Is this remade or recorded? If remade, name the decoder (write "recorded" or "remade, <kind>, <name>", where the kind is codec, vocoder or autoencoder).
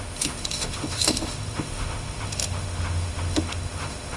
remade, autoencoder, DAC-VAE